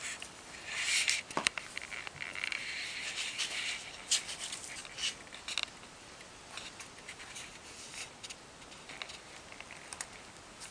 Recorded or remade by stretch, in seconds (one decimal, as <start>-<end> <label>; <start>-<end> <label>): 0.0-4.8 remade; 4.8-5.9 recorded; 5.9-10.7 remade